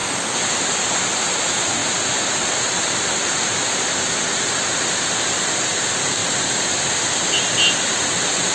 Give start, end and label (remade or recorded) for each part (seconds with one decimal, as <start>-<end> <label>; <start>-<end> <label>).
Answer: 0.0-0.7 remade; 0.7-1.8 recorded; 1.8-4.4 remade; 4.4-8.5 recorded